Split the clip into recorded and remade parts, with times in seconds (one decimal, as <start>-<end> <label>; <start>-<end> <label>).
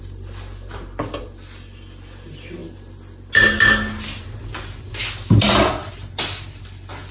0.0-7.1 recorded